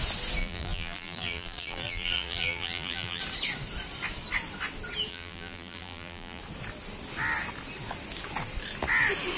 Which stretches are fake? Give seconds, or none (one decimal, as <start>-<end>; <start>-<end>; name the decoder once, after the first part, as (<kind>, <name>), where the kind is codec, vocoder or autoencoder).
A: 0.4-3.2 (vocoder, BigVGAN v2); 5.1-6.4